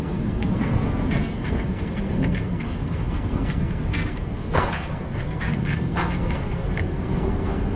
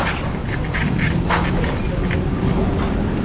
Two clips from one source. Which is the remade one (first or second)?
first